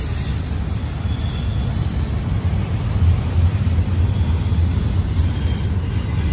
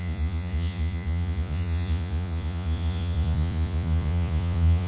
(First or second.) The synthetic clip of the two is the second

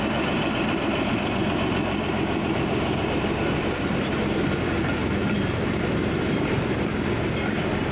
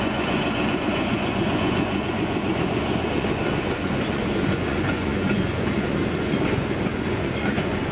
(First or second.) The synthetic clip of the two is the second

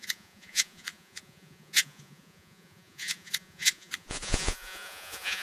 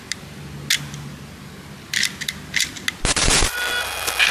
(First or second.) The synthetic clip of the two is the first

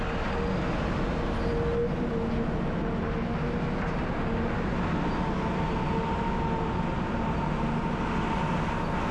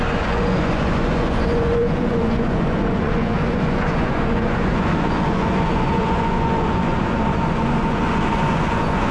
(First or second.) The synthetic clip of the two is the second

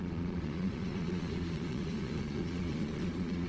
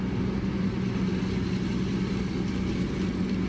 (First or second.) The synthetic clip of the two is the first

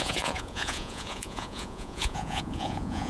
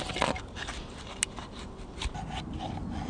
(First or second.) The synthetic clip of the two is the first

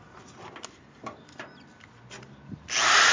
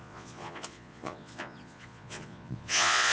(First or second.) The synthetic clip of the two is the second